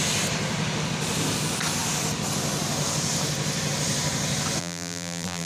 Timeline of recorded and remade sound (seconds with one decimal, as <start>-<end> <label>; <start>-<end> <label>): 0.0-4.6 recorded; 4.6-5.5 remade